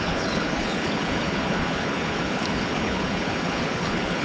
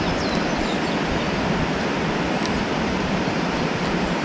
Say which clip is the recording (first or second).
second